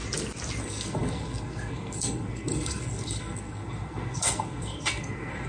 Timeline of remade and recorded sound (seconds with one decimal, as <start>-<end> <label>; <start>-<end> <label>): 0.0-0.6 recorded; 0.6-5.5 remade